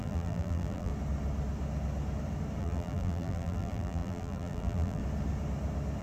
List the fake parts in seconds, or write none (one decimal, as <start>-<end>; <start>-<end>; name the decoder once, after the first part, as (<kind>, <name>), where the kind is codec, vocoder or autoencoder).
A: 0.0-0.9 (vocoder, BigVGAN v2); 2.6-5.0